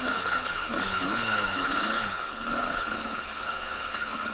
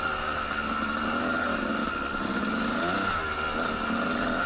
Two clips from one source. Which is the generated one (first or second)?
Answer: first